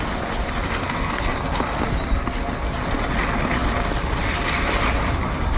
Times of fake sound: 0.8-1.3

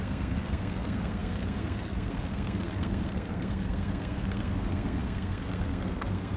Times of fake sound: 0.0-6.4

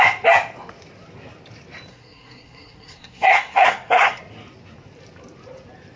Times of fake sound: 1.9-4.2

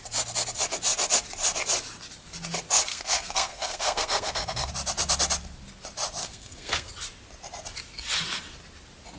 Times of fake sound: 2.9-4.7; 6.2-6.9